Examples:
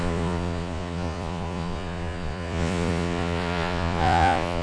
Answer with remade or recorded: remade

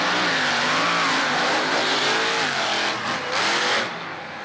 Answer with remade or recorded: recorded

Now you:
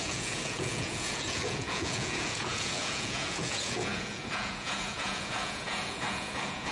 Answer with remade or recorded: remade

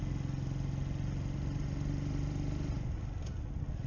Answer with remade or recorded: recorded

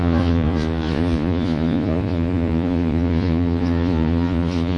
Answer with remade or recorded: remade